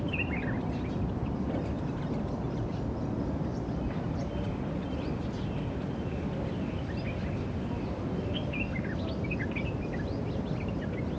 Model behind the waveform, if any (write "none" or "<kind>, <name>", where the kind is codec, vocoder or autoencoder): none